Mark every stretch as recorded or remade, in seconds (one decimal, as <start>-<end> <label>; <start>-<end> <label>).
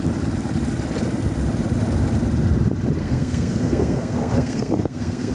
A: 0.0-3.0 recorded; 3.0-5.3 remade